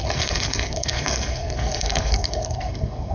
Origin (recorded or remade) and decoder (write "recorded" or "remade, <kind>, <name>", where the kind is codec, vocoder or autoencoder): remade, codec, SNAC